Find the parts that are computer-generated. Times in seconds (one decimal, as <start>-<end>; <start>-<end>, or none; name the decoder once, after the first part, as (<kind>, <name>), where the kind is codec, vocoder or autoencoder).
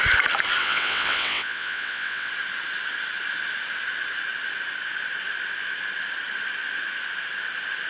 0.6-2.3 (vocoder, WaveNeXt)